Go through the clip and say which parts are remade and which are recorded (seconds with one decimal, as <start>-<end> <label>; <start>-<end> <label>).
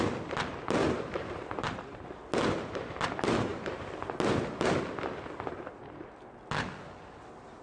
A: 0.0-0.8 recorded; 0.8-2.0 remade; 2.0-3.5 recorded; 3.5-4.0 remade; 4.0-7.6 recorded